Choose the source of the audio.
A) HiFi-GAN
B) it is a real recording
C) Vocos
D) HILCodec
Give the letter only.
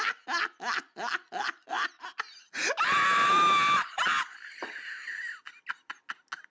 B